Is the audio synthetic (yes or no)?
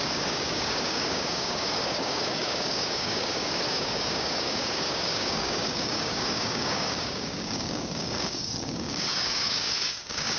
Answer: yes